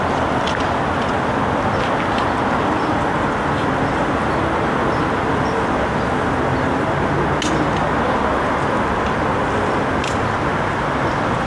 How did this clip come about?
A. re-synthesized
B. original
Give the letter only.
B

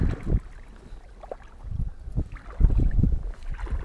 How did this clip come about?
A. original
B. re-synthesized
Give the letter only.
A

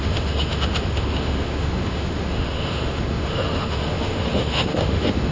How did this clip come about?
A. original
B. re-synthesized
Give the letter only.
B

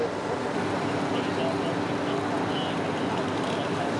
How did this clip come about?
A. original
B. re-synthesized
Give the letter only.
A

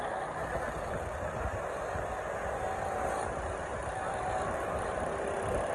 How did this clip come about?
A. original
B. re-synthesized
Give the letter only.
A